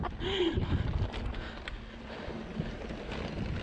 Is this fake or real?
real